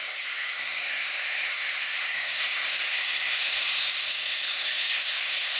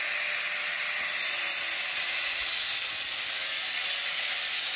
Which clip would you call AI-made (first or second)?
first